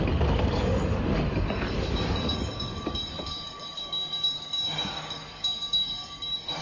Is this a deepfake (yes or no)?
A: yes